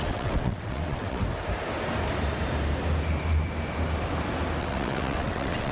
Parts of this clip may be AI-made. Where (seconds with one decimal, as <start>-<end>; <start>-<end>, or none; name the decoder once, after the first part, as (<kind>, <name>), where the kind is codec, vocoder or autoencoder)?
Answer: 0.0-1.2 (vocoder, WaveNeXt); 4.6-5.7